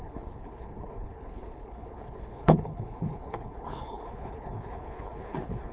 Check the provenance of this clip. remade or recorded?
remade